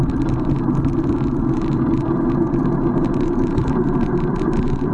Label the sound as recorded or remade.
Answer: recorded